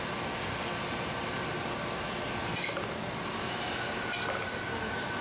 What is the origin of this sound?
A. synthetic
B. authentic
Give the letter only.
B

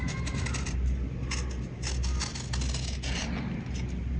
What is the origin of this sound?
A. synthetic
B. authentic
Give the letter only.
B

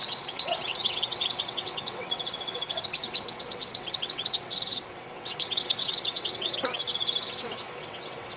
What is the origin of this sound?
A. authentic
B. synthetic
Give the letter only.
B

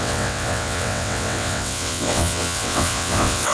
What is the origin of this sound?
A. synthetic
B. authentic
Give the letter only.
A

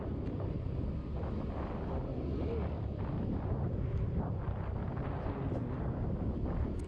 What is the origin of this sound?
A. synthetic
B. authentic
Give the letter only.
B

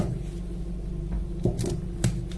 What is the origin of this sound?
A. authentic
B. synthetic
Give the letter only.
A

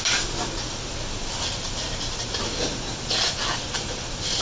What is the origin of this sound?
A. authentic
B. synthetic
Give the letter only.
A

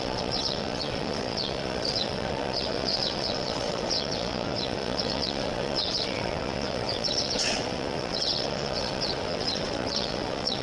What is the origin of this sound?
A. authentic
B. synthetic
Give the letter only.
B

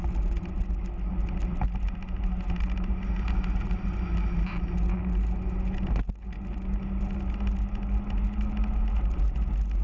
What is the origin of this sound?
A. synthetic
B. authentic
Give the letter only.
B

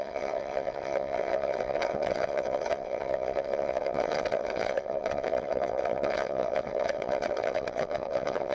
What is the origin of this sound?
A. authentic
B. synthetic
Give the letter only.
B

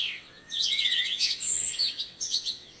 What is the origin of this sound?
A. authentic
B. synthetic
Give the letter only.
B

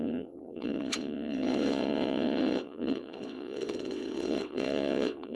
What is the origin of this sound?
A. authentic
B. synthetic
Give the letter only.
B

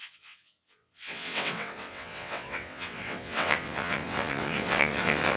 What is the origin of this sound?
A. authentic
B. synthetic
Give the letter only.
B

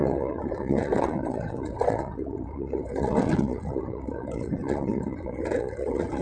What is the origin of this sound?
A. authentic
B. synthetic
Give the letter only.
B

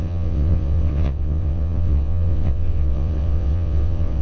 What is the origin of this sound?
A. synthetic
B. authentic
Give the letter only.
A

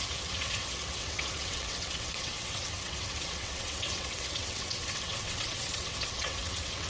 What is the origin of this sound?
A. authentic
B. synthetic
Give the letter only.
B